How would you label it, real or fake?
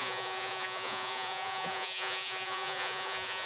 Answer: fake